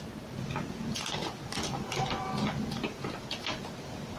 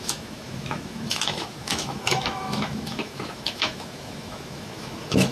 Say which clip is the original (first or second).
first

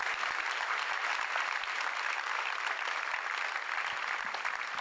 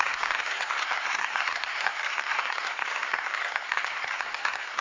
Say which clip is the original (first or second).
first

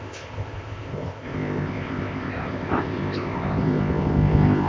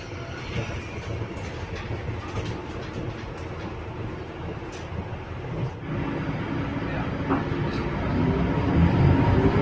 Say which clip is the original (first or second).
second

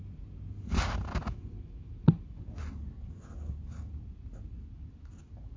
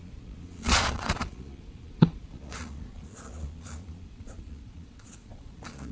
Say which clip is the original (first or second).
first